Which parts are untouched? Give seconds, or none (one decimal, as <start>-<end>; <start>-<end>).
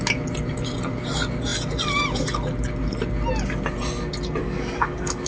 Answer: 0.0-4.4